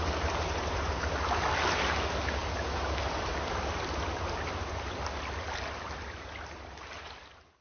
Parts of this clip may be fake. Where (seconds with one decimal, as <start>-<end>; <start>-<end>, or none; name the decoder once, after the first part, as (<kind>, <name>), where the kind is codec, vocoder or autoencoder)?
none